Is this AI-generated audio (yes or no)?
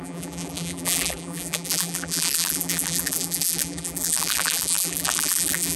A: yes